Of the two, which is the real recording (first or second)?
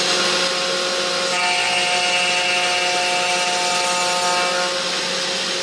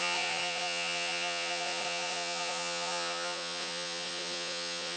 first